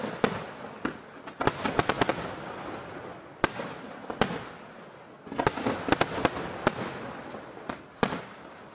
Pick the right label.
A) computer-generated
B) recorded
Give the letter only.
B